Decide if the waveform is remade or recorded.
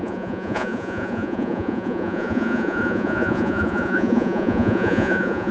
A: remade